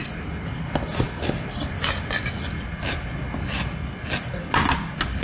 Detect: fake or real real